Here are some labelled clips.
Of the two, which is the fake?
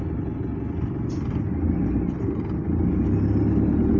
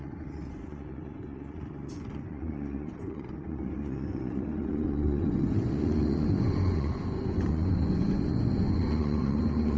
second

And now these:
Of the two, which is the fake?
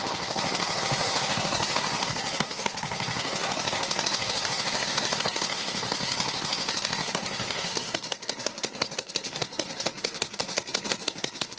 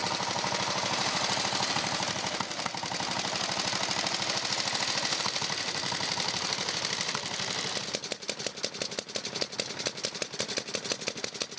first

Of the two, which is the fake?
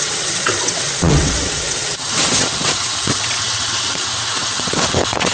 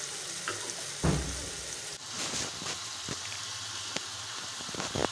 first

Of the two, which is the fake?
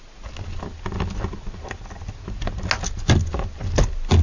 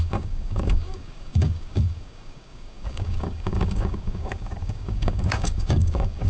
second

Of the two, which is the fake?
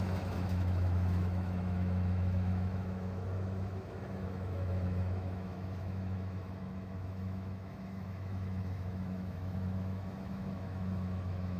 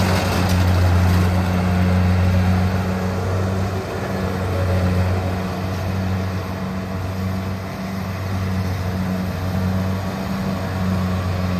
first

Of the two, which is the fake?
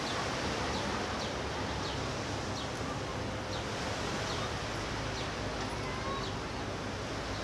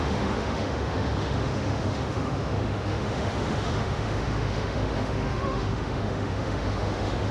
second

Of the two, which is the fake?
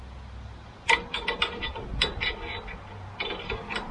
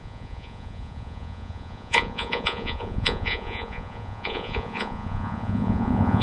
second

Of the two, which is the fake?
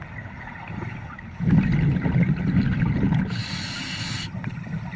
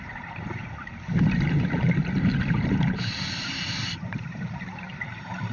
second